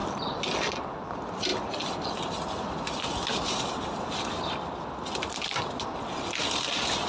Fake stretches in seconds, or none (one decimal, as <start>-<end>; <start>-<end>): none